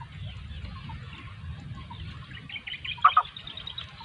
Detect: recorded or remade recorded